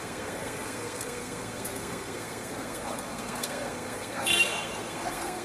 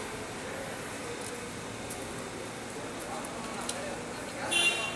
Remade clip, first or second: first